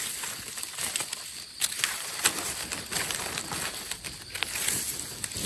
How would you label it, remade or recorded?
recorded